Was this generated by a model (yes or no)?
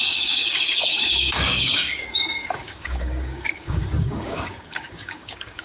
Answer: yes